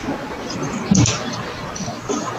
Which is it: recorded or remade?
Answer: recorded